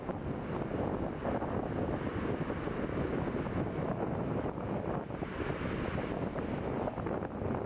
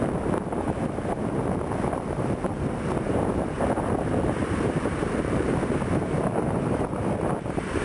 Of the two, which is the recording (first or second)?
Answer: first